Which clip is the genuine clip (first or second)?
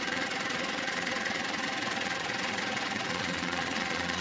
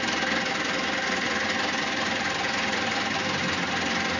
second